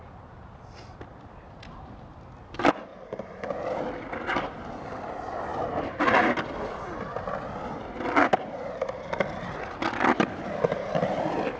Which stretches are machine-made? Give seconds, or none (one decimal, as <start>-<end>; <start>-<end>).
none